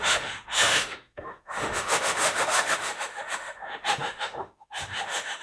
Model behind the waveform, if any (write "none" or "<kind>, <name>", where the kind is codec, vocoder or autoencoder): autoencoder, DAC-VAE